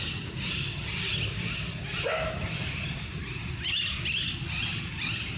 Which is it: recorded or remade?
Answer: recorded